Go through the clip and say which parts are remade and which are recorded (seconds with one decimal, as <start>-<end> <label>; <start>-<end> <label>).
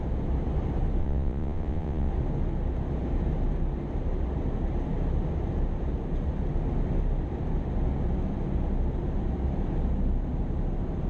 0.0-1.0 recorded; 1.0-2.1 remade; 2.1-11.1 recorded